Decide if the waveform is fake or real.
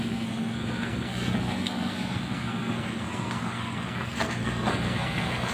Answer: fake